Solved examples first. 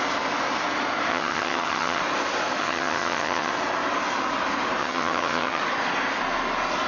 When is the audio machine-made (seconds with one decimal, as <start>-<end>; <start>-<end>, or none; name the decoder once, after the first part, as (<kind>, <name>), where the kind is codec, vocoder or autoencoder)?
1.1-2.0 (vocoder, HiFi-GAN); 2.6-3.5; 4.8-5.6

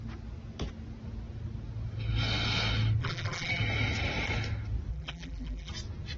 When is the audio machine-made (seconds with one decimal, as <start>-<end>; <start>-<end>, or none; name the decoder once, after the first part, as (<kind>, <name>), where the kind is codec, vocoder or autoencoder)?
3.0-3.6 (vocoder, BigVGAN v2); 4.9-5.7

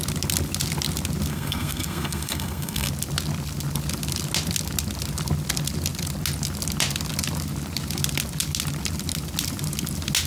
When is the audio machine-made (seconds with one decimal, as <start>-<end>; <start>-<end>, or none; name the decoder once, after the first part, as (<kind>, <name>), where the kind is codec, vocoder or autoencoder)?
1.3-2.9 (codec, SNAC)

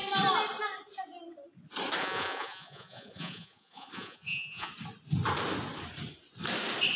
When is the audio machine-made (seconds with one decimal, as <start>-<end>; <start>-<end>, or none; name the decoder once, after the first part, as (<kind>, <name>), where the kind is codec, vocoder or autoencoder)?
2.0-4.7 (vocoder, Vocos)